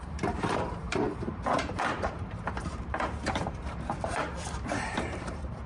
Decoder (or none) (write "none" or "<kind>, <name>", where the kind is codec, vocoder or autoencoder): vocoder, BigVGAN v2